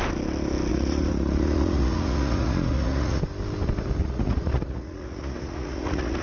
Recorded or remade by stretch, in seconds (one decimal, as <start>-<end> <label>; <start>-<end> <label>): 0.0-0.7 recorded; 0.7-3.2 remade; 3.2-4.0 recorded; 4.0-6.2 remade

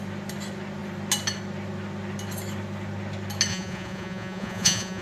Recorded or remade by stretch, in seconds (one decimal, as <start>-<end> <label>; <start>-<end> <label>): 0.0-3.5 recorded; 3.5-5.0 remade

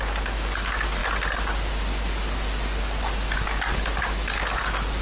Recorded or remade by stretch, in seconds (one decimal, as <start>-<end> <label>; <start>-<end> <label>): 0.0-5.0 recorded

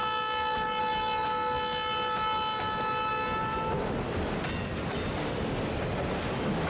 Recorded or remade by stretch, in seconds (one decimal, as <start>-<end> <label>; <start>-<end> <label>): 0.0-6.7 recorded

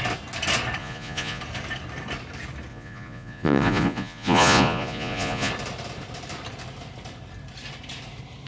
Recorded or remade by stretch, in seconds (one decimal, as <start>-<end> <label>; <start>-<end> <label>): 0.0-0.8 recorded; 0.8-1.4 remade; 1.4-2.7 recorded; 2.7-5.5 remade; 5.5-8.5 recorded